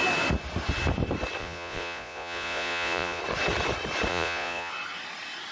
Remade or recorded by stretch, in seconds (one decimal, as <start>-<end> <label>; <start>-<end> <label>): 0.0-1.4 recorded; 1.4-3.2 remade; 3.2-4.1 recorded; 4.1-4.7 remade; 4.7-5.5 recorded

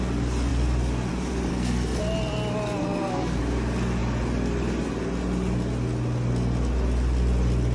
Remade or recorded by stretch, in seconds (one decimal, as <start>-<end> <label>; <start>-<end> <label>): 0.0-1.5 recorded; 1.5-2.0 remade; 2.0-2.8 recorded; 2.8-3.4 remade; 3.4-7.7 recorded

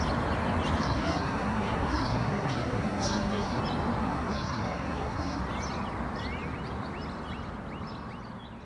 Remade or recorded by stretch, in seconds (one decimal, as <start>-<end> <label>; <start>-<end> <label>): 0.0-0.8 recorded; 0.8-3.6 remade; 3.6-4.0 recorded; 4.0-5.4 remade; 5.4-8.7 recorded

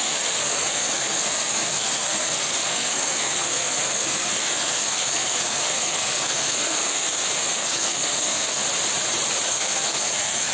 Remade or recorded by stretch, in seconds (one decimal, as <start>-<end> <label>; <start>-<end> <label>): 0.0-8.6 remade; 8.6-9.5 recorded; 9.5-10.5 remade

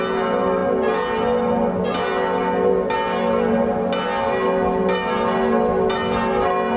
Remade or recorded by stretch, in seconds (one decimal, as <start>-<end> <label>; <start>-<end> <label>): 0.0-6.8 recorded